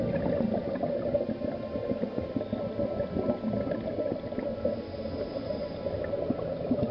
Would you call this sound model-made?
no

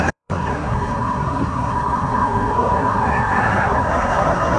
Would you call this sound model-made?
yes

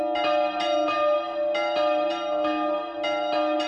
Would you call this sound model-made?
no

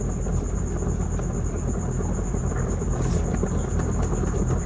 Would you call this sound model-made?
no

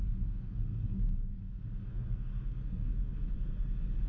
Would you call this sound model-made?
yes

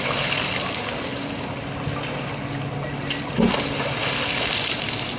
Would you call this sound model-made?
no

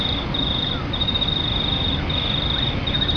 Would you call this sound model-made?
no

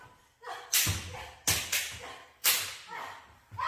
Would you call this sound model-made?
no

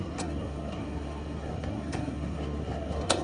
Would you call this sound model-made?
yes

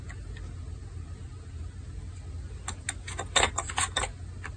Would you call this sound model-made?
no